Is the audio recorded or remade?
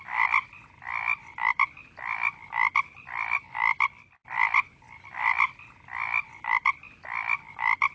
recorded